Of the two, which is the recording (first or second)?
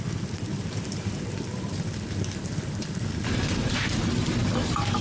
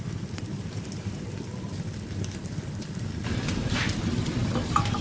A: first